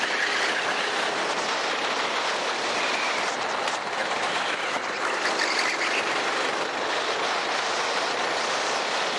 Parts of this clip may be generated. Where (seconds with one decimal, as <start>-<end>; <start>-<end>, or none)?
none

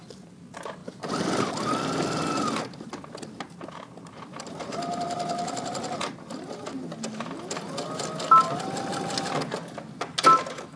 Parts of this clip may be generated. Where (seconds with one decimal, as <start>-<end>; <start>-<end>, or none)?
none

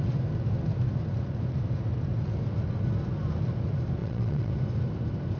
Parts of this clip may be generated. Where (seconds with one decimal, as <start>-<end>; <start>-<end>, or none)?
4.0-4.5

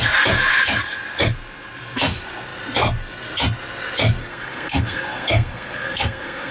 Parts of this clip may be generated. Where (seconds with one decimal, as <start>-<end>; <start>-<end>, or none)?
4.2-6.5